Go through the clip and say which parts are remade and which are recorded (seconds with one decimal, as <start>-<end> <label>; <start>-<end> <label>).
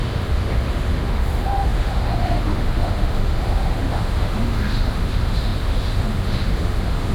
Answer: 0.0-7.1 remade